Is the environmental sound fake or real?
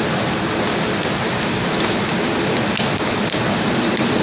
real